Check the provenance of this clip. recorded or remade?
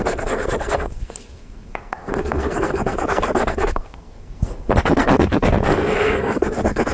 remade